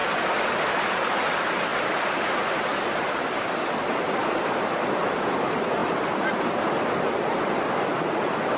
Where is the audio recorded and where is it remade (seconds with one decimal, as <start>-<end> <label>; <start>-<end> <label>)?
0.0-5.8 recorded; 5.8-6.3 remade; 6.3-8.6 recorded